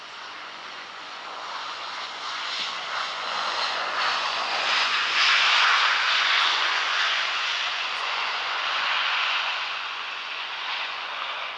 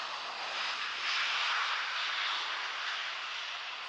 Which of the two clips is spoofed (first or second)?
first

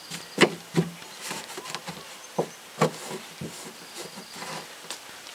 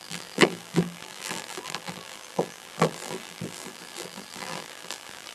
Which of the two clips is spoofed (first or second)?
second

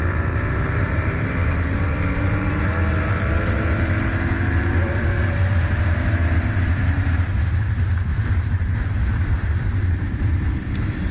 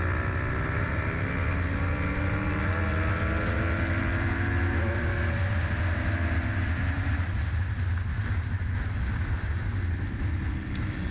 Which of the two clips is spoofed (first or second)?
first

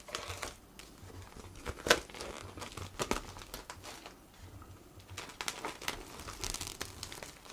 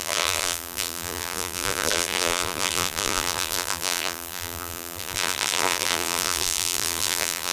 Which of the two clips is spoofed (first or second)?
second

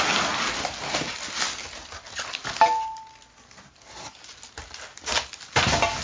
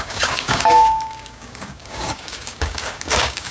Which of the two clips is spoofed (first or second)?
second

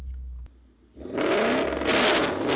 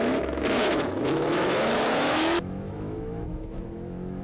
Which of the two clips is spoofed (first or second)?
second